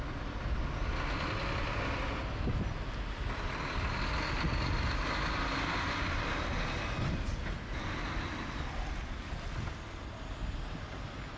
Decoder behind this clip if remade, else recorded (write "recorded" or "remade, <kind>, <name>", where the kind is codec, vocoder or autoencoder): recorded